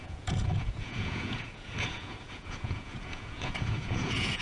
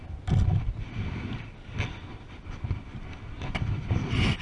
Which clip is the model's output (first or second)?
first